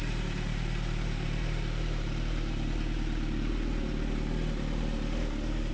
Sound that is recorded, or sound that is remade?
remade